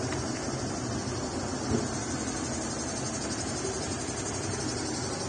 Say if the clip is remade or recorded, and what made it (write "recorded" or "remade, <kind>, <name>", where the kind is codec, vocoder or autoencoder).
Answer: recorded